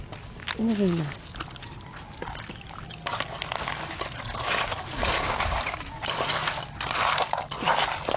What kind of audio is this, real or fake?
real